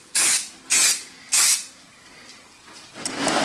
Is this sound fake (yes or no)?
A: no